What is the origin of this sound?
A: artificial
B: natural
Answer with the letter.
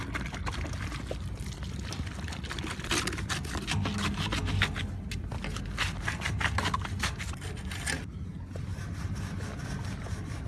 B